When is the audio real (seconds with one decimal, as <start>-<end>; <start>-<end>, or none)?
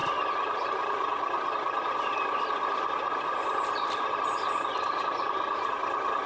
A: 0.0-6.3